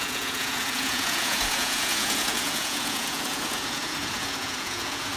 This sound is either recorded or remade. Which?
remade